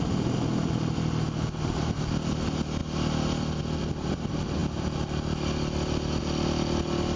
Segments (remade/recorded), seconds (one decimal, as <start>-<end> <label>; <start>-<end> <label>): 0.0-7.2 recorded